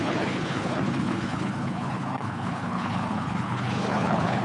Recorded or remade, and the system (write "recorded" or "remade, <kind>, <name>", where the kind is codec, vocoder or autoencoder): remade, codec, HILCodec